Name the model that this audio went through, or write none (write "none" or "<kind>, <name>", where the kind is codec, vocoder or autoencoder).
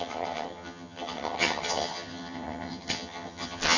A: vocoder, HiFi-GAN